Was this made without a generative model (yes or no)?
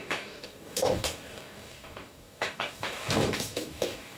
no